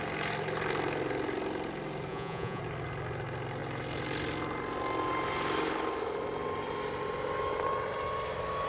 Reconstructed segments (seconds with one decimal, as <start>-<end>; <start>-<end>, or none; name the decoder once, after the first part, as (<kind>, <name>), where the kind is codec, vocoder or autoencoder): 2.1-2.6 (vocoder, Vocos)